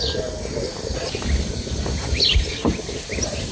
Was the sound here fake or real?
real